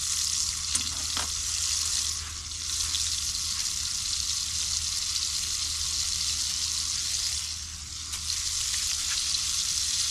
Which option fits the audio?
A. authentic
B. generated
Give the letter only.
A